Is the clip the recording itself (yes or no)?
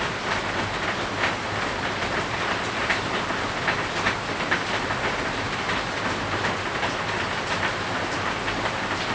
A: yes